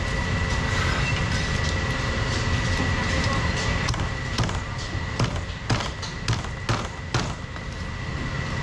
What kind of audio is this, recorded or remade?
recorded